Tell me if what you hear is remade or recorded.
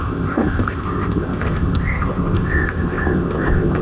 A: remade